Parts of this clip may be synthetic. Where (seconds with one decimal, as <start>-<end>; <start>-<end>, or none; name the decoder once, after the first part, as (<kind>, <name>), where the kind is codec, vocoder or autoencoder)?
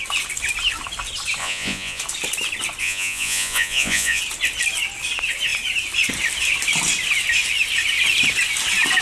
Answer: 1.4-2.0 (vocoder, Vocos); 2.8-4.2